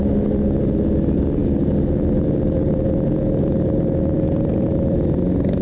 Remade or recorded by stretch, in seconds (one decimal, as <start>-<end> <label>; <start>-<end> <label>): 0.0-5.6 recorded